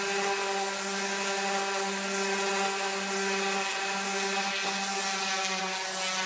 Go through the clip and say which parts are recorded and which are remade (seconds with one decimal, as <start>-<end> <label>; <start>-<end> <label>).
0.0-6.3 recorded